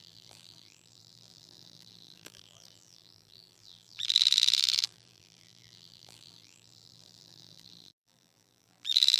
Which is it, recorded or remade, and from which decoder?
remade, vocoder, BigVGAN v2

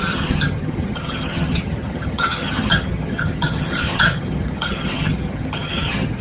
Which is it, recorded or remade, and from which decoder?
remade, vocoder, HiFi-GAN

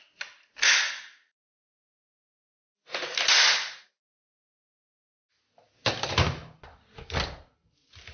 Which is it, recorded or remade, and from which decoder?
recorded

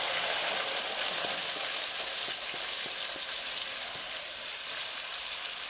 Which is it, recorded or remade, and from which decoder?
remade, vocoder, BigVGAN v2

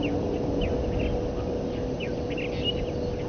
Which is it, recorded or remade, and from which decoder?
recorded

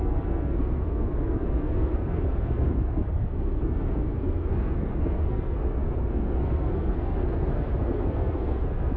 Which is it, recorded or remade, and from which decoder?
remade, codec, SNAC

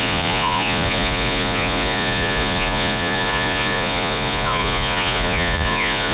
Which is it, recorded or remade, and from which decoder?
remade, vocoder, Vocos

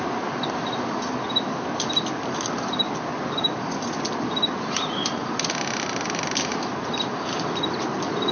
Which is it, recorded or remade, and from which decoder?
recorded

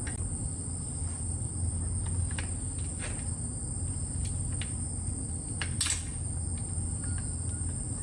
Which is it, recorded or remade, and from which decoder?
recorded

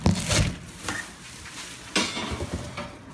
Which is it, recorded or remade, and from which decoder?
recorded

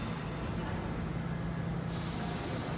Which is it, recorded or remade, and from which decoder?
recorded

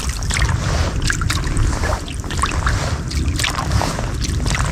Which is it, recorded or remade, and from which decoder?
recorded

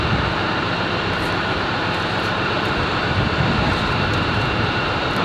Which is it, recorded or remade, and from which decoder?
remade, vocoder, BigVGAN v2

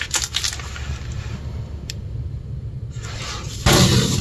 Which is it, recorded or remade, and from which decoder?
recorded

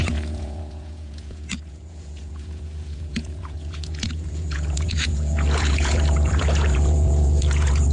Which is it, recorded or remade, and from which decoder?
remade, vocoder, Vocos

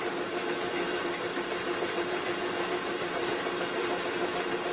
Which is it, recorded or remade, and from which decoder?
recorded